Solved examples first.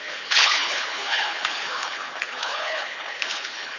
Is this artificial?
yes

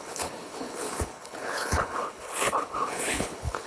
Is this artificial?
yes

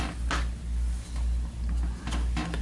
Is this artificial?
no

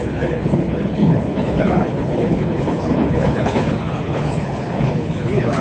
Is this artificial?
yes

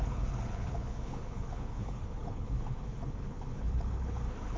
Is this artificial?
yes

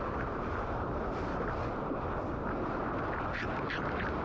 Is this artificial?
no